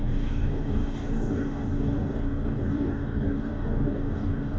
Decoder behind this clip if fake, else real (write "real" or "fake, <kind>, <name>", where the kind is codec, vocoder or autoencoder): fake, codec, DAC